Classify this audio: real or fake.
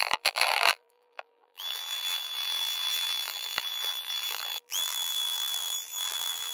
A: fake